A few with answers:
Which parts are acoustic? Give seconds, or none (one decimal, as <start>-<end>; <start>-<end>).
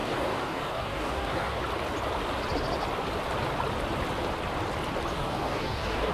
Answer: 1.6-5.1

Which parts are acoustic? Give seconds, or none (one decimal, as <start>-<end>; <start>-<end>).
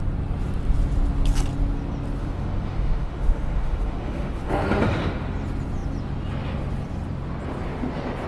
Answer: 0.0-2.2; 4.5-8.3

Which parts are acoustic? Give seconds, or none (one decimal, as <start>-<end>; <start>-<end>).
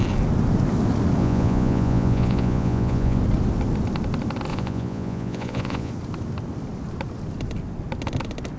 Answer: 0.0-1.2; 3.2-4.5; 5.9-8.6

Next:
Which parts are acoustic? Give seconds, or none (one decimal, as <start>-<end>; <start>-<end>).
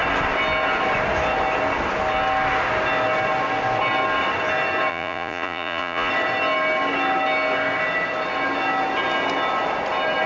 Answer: 0.0-4.9; 6.1-10.3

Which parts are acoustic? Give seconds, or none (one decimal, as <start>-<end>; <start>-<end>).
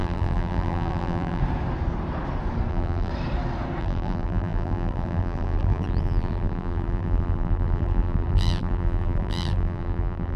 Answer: 1.4-2.7; 3.1-3.8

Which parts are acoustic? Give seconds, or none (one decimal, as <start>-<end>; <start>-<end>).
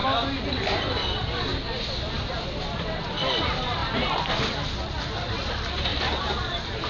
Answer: 0.0-6.9